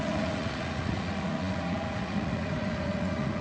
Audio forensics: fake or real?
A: fake